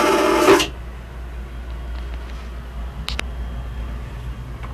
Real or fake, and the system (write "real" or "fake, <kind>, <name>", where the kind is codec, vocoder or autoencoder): real